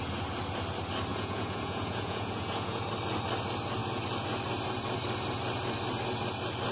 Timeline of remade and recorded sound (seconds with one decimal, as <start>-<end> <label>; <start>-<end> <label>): 0.0-1.1 recorded; 1.1-2.9 remade; 2.9-6.7 recorded